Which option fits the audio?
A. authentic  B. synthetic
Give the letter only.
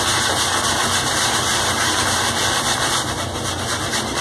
A